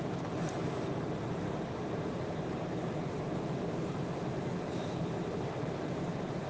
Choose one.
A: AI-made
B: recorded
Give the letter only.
A